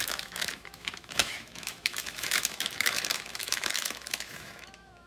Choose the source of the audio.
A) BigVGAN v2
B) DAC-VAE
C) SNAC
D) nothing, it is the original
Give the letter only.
B